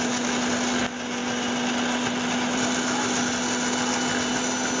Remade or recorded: recorded